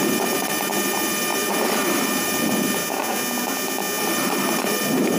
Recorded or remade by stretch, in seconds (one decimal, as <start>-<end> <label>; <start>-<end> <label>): 0.0-2.8 remade; 2.8-4.0 recorded; 4.0-5.2 remade

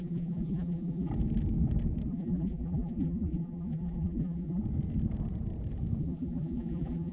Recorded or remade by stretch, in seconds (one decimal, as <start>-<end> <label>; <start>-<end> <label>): 0.0-1.1 remade; 1.1-2.1 recorded; 2.1-4.6 remade; 4.6-6.0 recorded; 6.0-7.1 remade

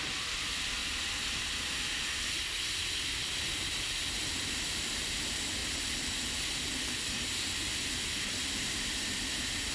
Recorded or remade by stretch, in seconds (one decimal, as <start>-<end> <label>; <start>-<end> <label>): 0.0-0.8 remade; 0.8-3.2 recorded; 3.2-5.6 remade; 5.6-6.7 recorded; 6.7-9.7 remade

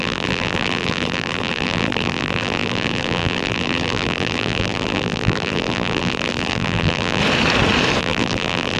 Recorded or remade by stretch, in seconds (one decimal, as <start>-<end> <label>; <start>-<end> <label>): 0.0-7.2 remade; 7.2-8.0 recorded; 8.0-8.8 remade

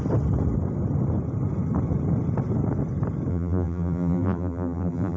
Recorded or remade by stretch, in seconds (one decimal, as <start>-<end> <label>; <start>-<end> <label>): 0.0-3.3 recorded; 3.3-5.2 remade

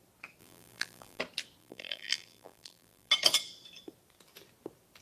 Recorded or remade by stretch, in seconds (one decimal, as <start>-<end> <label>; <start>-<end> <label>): 0.0-0.4 recorded; 0.4-1.2 remade; 1.2-1.6 recorded; 1.6-3.1 remade; 3.1-5.0 recorded